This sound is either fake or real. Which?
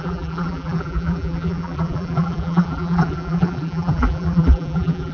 fake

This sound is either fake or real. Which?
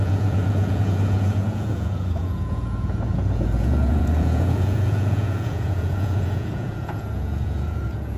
fake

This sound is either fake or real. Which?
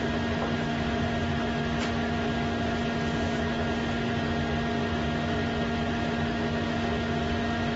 real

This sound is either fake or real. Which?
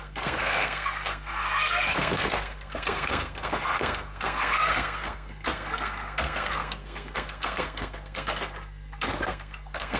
fake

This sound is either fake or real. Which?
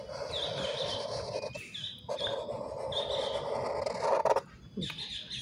real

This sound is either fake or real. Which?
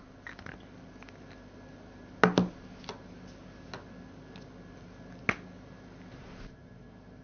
real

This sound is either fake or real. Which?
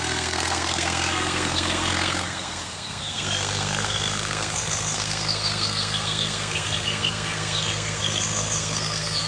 fake